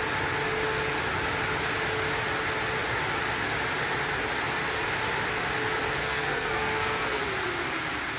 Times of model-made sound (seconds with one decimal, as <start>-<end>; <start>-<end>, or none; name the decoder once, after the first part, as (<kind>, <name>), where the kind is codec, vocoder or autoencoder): 6.0-7.2 (codec, SNAC)